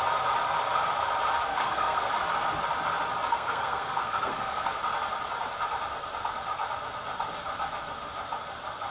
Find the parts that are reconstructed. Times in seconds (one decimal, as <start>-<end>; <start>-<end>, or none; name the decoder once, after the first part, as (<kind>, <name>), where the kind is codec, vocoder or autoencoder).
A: 1.5-2.1 (codec, SNAC); 3.3-4.8